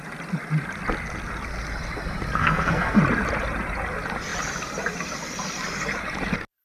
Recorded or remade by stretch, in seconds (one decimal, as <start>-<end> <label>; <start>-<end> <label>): 0.0-2.4 recorded; 2.4-3.0 remade; 3.0-6.6 recorded